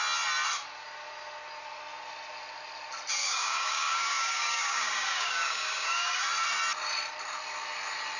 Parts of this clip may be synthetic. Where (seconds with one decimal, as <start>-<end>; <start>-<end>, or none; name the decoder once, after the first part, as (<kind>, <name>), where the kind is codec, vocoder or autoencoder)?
3.2-6.2 (codec, DAC)